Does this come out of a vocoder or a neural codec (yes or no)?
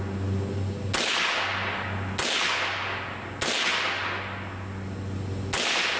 no